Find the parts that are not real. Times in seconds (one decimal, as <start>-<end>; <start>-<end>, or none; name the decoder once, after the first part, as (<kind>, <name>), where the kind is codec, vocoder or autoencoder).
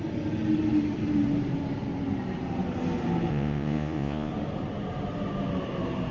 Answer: 3.3-4.3 (vocoder, Vocos)